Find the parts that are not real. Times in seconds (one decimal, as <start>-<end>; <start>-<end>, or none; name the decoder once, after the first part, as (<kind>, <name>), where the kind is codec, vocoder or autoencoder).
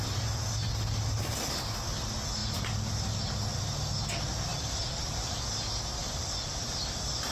2.4-2.9 (vocoder, BigVGAN v2); 4.5-5.4; 6.0-7.3